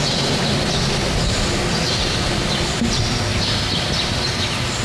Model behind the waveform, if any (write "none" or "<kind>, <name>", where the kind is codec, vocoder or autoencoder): none